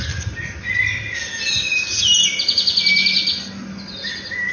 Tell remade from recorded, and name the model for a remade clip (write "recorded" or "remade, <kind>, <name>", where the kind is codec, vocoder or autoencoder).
recorded